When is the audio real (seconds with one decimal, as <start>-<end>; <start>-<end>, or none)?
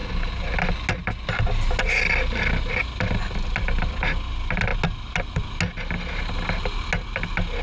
0.0-7.6